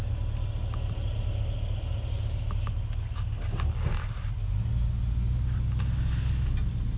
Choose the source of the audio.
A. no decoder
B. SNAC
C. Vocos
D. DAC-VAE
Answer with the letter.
A